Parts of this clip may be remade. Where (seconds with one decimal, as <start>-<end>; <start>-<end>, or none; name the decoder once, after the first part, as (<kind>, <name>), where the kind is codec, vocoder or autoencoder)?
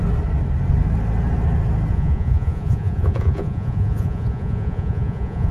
1.9-5.5 (vocoder, Vocos)